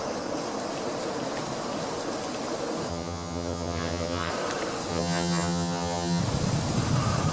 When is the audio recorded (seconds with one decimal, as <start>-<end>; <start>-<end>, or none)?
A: 0.0-2.9; 4.3-4.9; 6.2-7.3